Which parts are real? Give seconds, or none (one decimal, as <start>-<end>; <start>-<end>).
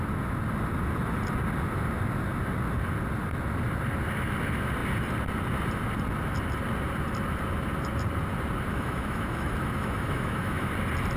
0.0-8.7; 10.7-11.2